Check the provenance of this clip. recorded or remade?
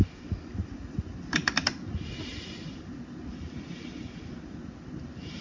recorded